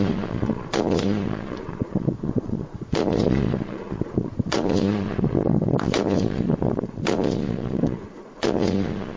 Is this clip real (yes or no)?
no